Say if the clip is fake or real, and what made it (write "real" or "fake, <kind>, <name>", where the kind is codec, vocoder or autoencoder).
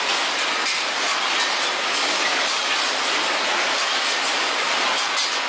real